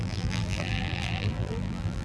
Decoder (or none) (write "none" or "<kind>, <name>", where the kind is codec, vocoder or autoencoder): vocoder, BigVGAN v2